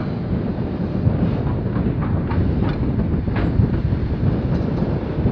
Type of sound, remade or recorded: recorded